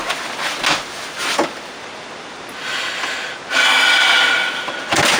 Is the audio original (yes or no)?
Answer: yes